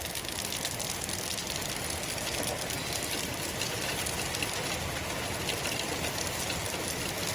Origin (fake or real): real